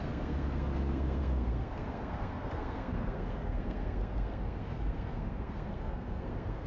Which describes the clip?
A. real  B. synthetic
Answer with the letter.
B